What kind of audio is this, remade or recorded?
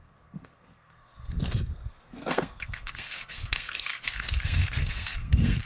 remade